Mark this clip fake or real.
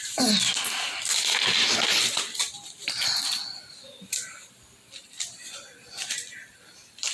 fake